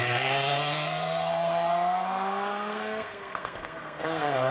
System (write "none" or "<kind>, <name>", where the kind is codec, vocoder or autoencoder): codec, SNAC